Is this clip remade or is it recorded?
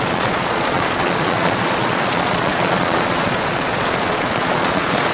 remade